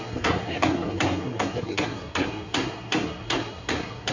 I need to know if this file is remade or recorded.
remade